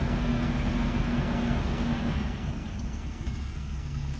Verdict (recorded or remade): remade